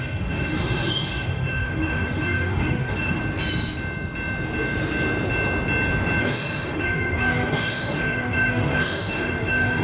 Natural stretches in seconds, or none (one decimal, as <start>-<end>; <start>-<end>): 3.2-6.2